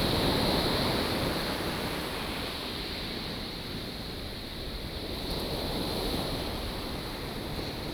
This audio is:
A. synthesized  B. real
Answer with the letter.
A